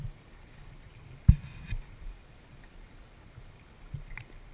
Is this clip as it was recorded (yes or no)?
yes